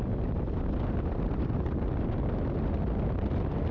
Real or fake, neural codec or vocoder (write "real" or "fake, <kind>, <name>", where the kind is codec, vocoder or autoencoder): real